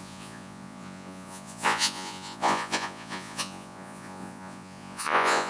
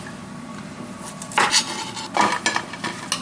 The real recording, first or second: second